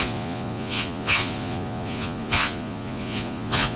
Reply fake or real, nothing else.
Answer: fake